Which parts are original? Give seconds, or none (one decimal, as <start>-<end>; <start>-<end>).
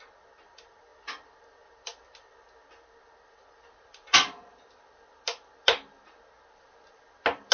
0.0-7.5